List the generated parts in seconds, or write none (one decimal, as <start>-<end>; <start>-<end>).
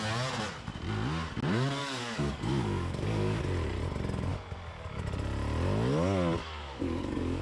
1.8-3.4; 4.3-5.0; 6.4-7.4